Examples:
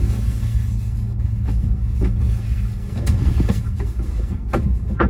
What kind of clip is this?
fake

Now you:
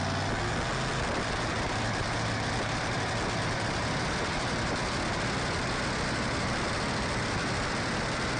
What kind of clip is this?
real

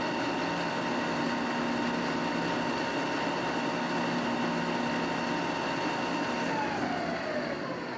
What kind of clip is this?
real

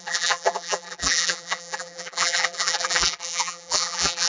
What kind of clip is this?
fake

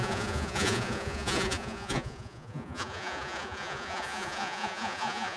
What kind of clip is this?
fake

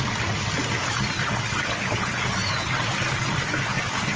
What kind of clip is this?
real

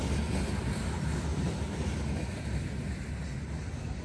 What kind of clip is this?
real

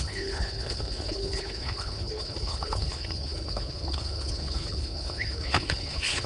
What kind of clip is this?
fake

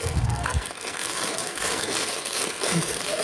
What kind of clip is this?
fake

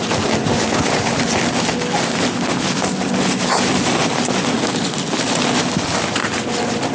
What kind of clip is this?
real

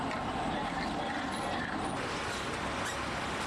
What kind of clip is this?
real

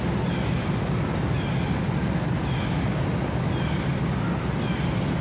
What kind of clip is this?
real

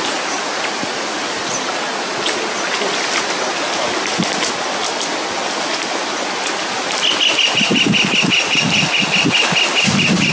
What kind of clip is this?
real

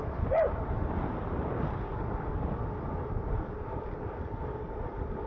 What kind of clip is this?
real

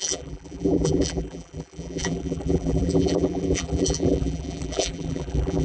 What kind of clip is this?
fake